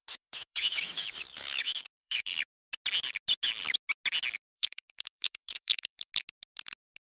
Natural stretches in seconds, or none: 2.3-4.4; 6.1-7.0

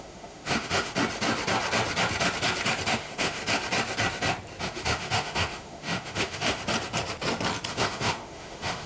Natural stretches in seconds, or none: 0.9-2.9; 3.4-4.6; 6.6-7.7

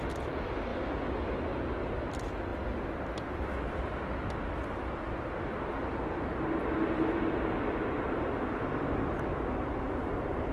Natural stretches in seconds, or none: 0.0-10.5